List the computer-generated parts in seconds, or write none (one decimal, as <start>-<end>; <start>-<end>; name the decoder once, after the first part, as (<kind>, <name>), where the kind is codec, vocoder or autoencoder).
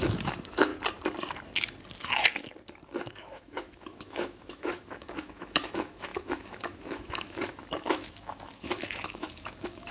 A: 0.0-0.7 (autoencoder, DAC-VAE); 3.0-9.9